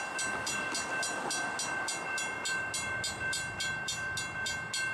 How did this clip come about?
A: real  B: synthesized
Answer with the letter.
A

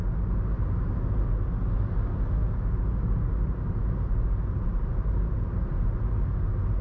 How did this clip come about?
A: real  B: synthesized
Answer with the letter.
A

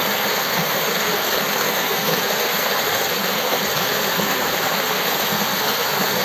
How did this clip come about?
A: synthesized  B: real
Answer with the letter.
A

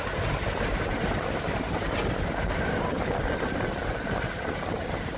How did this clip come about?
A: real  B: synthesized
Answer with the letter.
A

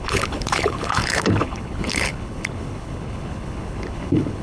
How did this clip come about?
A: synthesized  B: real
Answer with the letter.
A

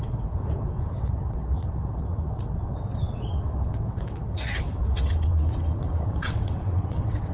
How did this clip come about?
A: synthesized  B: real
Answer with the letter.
A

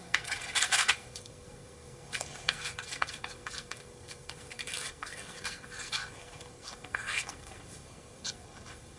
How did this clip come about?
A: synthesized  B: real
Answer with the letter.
A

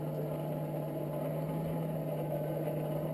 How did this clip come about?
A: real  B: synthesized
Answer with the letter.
A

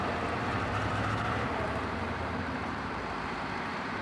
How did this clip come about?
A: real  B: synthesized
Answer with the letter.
B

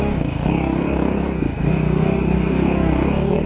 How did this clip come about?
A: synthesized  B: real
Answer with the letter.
A